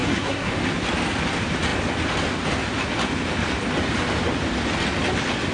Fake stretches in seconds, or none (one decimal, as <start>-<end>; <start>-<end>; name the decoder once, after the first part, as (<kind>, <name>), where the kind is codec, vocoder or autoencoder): 0.0-0.5 (codec, SNAC)